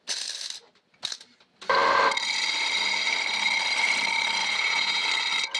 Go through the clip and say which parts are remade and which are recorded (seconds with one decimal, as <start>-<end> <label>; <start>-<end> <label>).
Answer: 0.0-4.4 recorded; 4.4-5.0 remade; 5.0-5.6 recorded

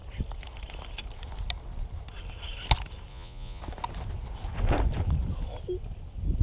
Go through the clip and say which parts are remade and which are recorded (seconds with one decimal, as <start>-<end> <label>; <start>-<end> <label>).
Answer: 0.0-3.1 recorded; 3.1-3.6 remade; 3.6-6.4 recorded

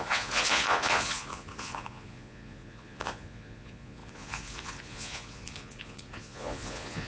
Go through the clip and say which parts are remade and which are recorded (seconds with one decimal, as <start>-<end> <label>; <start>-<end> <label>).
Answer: 0.0-7.1 remade

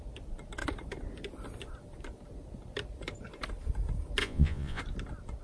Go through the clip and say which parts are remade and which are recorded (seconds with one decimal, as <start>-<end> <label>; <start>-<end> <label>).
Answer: 0.0-4.2 recorded; 4.2-4.8 remade; 4.8-5.4 recorded

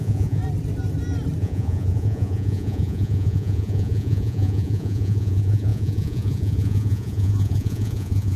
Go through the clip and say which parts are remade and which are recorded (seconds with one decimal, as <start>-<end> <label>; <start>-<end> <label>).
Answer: 0.0-0.4 remade; 0.4-1.4 recorded; 1.4-8.4 remade